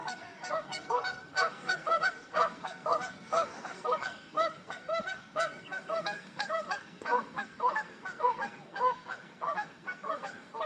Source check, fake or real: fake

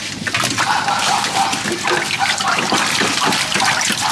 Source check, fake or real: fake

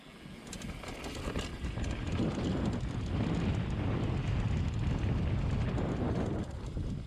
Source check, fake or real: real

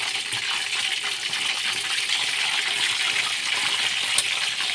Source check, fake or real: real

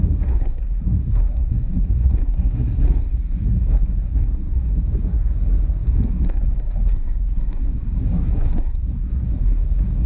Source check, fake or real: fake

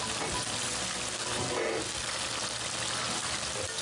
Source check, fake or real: real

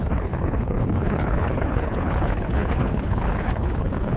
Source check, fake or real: fake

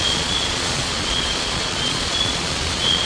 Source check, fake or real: fake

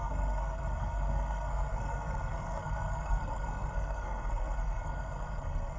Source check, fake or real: fake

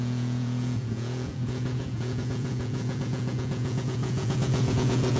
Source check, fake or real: fake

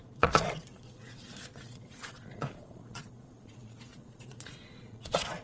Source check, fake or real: fake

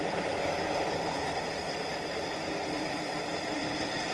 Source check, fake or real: real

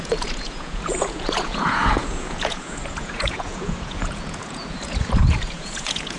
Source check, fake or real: fake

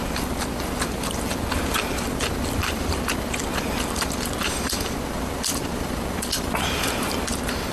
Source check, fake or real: fake